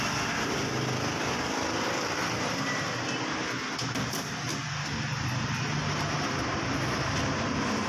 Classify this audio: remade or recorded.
recorded